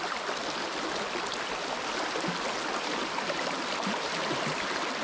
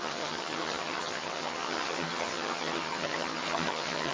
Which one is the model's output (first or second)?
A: second